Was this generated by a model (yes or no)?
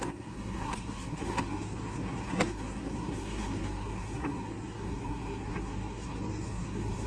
yes